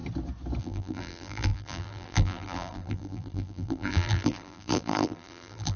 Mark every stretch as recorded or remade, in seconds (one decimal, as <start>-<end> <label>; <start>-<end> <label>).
0.0-0.6 recorded; 0.6-5.8 remade